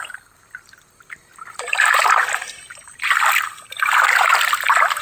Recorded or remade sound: recorded